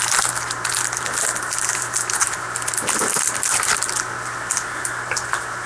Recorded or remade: recorded